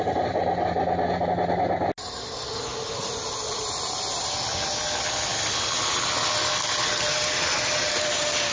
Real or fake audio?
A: real